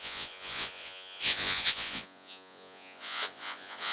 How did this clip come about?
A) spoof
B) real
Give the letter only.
A